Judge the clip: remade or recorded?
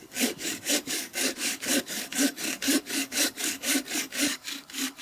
remade